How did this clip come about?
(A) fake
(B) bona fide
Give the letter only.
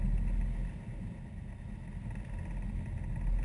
B